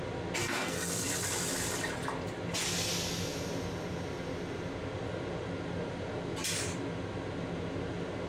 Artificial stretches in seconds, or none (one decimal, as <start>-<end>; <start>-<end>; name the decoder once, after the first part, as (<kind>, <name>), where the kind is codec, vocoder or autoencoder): 0.4-1.1 (codec, SNAC)